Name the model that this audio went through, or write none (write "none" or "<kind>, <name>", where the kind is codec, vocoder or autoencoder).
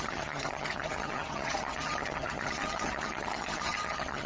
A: vocoder, HiFi-GAN